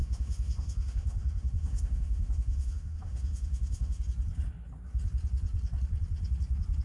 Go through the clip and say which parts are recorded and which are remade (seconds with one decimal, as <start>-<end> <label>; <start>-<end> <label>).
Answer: 0.0-4.0 remade; 4.0-6.8 recorded